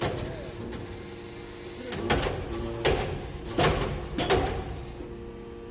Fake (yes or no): no